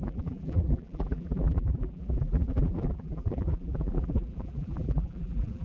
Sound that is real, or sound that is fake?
fake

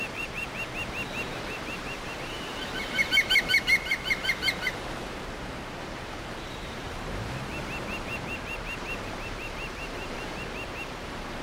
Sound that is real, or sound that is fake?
fake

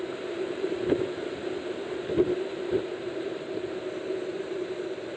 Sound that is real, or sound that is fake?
fake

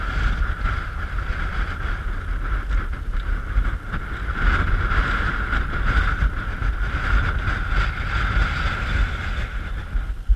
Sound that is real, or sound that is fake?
real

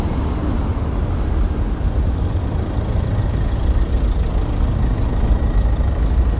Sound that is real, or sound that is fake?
real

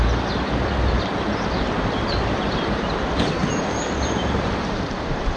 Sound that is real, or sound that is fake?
fake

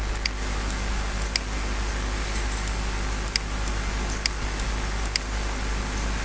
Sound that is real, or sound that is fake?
real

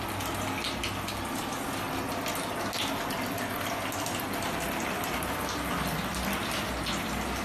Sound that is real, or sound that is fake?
real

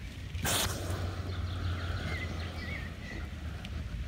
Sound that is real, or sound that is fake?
real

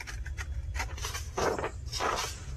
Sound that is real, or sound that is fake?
fake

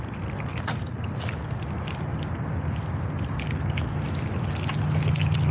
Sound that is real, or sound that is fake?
real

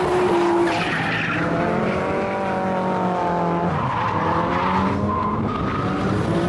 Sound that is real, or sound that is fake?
real